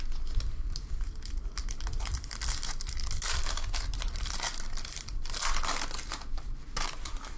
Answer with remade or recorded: recorded